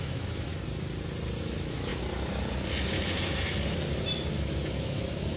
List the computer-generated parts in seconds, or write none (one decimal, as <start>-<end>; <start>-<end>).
0.0-0.5; 1.4-1.9; 4.3-5.4